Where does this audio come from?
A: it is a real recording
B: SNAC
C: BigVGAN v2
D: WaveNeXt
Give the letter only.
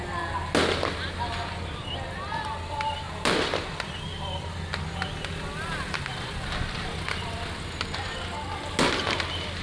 A